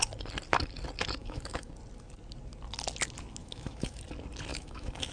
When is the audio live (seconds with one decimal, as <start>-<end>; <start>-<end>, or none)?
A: 0.0-1.2; 1.7-3.4; 4.0-4.5